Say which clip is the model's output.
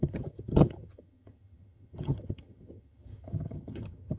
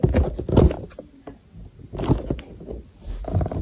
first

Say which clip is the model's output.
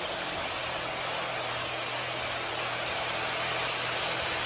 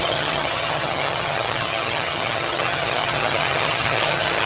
second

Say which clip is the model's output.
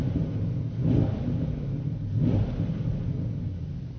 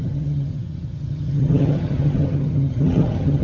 second